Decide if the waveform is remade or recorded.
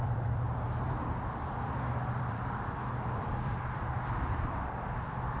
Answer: remade